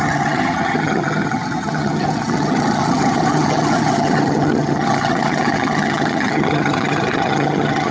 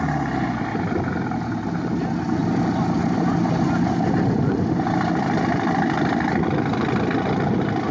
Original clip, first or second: second